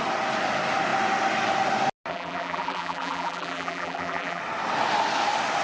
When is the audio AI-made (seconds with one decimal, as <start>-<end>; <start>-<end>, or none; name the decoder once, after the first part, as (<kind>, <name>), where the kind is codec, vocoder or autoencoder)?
2.1-4.4 (vocoder, BigVGAN v2)